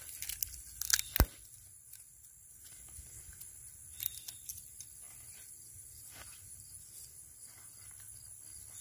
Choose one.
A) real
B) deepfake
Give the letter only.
A